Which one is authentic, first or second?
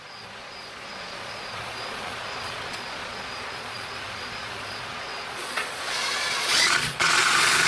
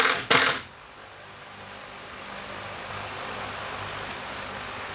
second